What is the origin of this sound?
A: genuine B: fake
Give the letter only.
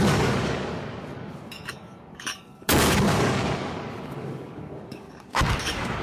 B